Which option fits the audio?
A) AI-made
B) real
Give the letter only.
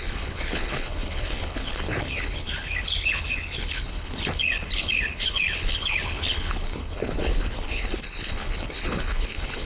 A